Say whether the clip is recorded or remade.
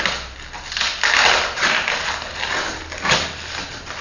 recorded